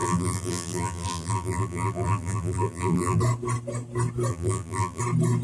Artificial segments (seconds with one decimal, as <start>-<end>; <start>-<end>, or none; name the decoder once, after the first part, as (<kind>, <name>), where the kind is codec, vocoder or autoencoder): 0.0-3.2 (vocoder, BigVGAN v2); 4.3-5.0